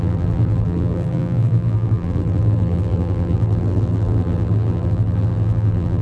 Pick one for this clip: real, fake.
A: fake